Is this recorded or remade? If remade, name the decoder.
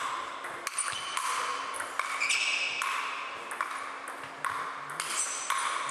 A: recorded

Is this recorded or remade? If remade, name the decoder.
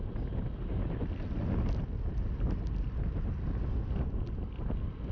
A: recorded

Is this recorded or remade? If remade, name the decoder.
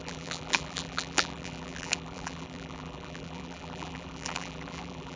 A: remade, vocoder, BigVGAN v2